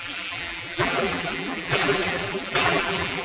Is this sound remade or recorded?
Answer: remade